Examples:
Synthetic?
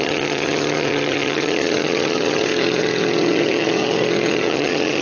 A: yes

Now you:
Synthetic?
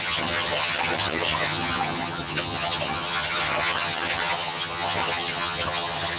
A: yes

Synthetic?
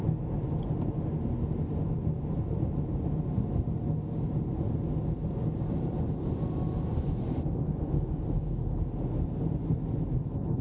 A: no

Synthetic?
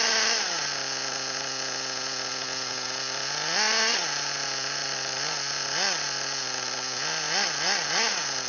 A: no